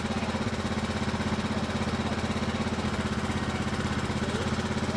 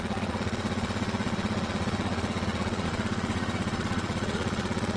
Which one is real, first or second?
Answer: first